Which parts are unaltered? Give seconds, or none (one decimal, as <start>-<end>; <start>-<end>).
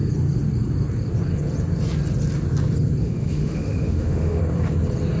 0.0-3.0; 4.4-5.2